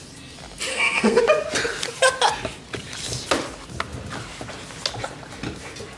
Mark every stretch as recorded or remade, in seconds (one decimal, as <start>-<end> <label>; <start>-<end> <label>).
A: 0.0-0.7 recorded; 0.7-1.2 remade; 1.2-6.0 recorded